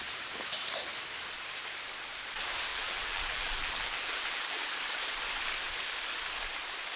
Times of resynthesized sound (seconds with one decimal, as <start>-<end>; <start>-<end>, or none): 2.7-4.6